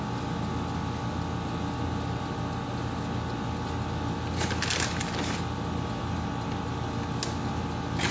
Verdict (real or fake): real